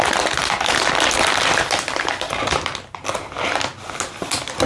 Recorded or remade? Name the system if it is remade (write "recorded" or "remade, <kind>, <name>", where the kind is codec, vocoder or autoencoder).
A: recorded